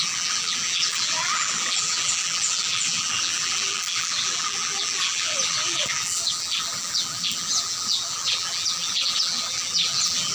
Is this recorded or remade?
remade